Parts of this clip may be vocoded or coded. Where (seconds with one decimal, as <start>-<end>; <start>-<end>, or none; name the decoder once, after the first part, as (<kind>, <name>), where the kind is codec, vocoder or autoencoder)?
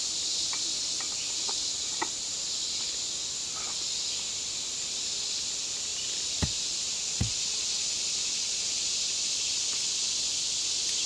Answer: none